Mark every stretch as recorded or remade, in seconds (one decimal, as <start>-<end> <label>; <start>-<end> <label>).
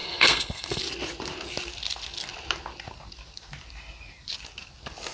0.0-0.8 remade; 0.8-5.1 recorded